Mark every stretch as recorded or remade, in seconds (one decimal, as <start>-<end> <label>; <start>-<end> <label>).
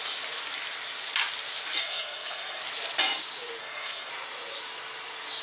0.0-1.8 recorded; 1.8-2.6 remade; 2.6-3.6 recorded; 3.6-4.1 remade; 4.1-5.4 recorded